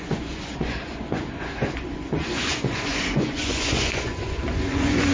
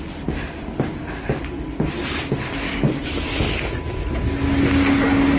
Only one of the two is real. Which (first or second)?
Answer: second